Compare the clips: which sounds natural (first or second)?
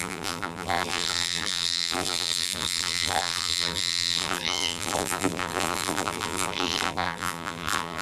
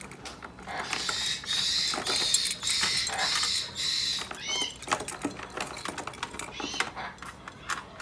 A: second